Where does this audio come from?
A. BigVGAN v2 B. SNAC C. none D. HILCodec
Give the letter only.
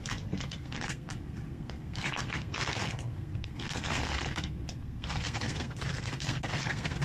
B